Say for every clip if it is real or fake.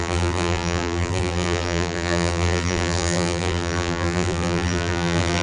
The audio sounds fake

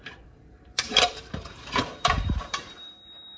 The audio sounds fake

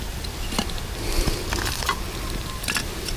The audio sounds real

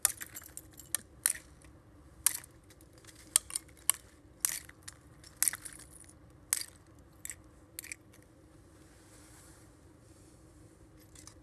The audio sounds real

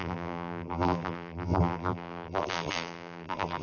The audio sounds fake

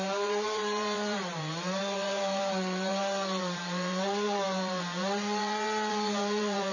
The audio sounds fake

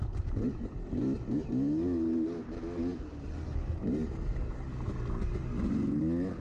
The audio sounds real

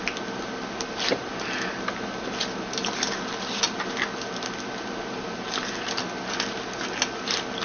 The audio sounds real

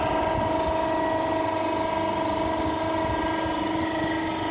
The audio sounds real